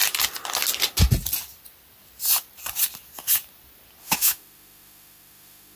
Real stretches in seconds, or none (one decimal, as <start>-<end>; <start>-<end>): 0.0-4.0